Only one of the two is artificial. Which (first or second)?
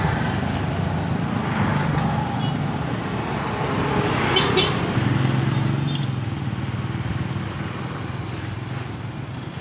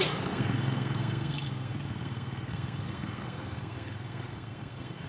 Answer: second